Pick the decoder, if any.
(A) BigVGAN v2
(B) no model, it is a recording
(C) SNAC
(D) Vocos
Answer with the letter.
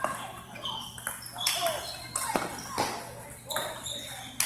B